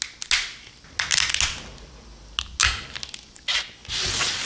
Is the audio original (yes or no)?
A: yes